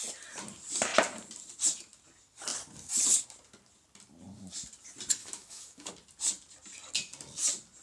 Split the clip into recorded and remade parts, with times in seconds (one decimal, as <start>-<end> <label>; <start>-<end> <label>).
0.0-5.2 recorded; 5.2-5.9 remade; 5.9-7.8 recorded